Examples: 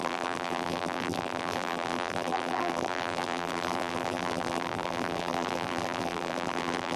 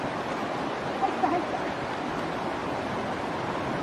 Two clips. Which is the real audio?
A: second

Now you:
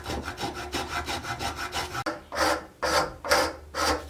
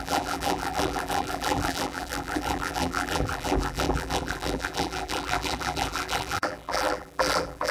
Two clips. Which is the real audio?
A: first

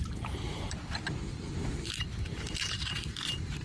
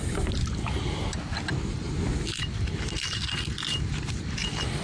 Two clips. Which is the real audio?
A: second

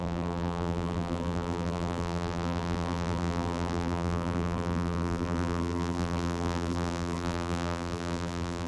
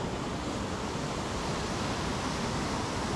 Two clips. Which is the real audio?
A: second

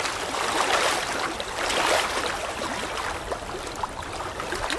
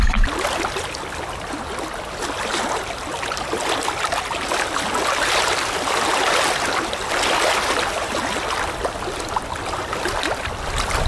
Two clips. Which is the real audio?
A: second